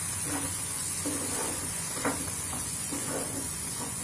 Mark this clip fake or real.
fake